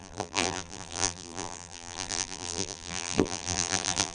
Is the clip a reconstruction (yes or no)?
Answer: yes